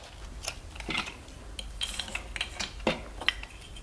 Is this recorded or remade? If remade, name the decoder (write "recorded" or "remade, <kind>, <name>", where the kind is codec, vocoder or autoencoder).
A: recorded